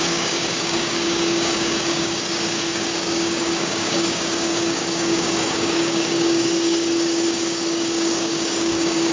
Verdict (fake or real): fake